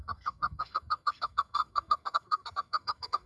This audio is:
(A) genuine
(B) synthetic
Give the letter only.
B